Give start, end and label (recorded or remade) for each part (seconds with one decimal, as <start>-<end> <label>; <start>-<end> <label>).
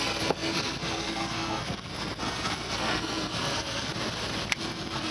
0.0-3.9 remade; 3.9-4.6 recorded; 4.6-5.1 remade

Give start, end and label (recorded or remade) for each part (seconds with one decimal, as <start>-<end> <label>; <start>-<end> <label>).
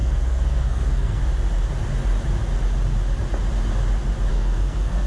0.0-1.2 remade; 1.2-4.3 recorded; 4.3-5.1 remade